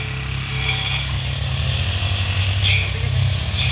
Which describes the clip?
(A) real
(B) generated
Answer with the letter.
A